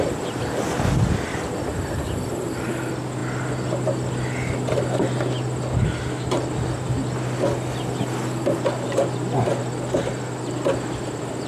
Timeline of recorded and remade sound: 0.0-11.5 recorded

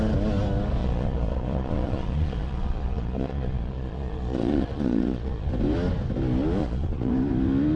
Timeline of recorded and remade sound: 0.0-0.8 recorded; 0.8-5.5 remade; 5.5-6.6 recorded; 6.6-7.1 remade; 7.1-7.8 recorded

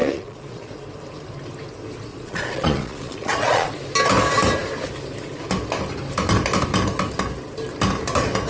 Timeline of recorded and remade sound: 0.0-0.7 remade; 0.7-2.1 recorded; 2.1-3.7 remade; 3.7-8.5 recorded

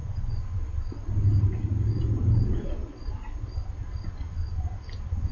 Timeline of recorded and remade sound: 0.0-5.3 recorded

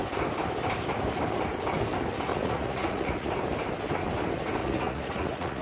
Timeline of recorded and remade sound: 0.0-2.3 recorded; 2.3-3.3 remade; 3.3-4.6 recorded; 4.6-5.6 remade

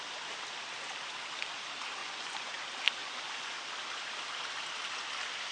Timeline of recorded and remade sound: 0.0-2.0 recorded; 2.0-2.5 remade; 2.5-3.0 recorded; 3.0-3.5 remade; 3.5-5.5 recorded

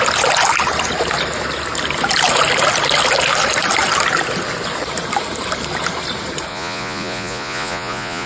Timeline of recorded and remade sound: 0.0-6.5 recorded; 6.5-8.3 remade